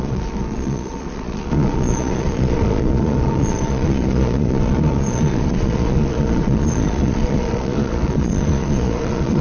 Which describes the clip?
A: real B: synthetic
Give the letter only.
B